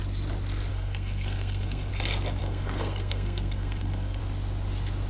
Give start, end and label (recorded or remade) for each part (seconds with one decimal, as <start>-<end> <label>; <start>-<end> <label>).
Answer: 0.0-0.7 recorded; 0.7-1.9 remade; 1.9-2.4 recorded; 2.4-4.2 remade; 4.2-5.1 recorded